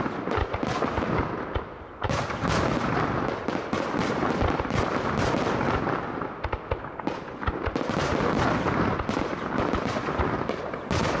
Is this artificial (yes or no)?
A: no